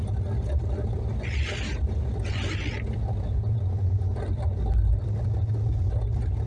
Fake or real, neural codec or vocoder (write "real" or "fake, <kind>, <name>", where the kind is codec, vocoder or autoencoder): real